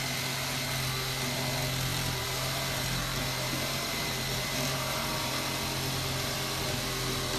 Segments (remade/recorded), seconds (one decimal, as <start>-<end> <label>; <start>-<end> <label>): 0.0-1.9 recorded; 1.9-5.5 remade; 5.5-7.4 recorded